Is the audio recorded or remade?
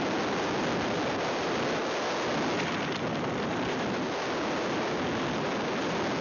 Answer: recorded